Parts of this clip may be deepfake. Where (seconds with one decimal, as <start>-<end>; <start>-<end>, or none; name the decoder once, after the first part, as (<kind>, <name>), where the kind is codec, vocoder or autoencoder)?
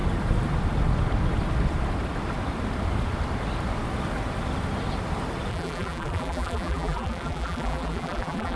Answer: 5.5-8.6 (vocoder, BigVGAN v2)